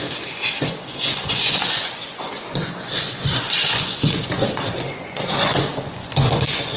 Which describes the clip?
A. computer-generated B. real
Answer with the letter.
A